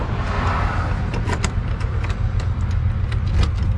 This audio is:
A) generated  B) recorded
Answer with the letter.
B